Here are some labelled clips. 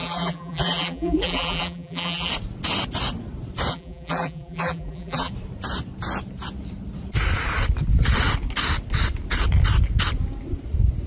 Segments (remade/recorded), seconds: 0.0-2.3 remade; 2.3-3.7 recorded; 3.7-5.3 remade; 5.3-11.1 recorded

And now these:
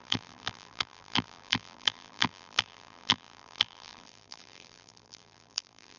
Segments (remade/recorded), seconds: 0.0-6.0 remade

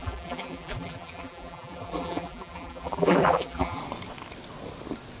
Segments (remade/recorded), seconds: 0.0-3.8 remade; 3.8-5.2 recorded